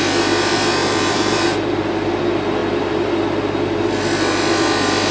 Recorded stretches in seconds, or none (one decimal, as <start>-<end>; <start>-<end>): 0.0-0.8; 2.2-5.1